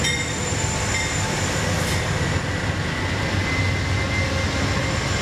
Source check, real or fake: real